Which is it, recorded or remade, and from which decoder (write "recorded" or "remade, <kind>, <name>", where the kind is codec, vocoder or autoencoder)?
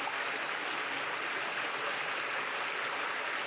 recorded